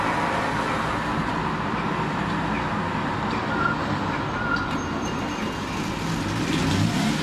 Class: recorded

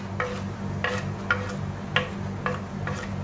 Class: recorded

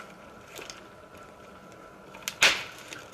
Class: recorded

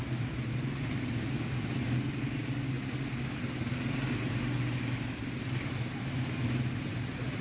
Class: recorded